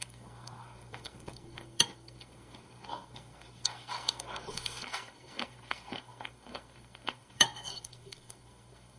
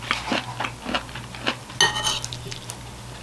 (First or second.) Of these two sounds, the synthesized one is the first